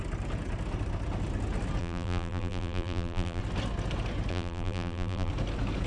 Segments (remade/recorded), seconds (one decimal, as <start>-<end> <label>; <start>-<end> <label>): 0.0-1.8 recorded; 1.8-3.4 remade; 3.4-4.3 recorded; 4.3-5.3 remade; 5.3-5.9 recorded